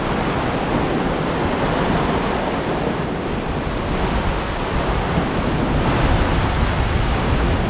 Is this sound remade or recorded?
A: recorded